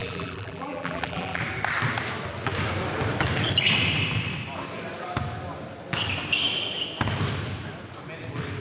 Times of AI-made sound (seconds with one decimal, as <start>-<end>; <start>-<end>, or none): 0.0-1.4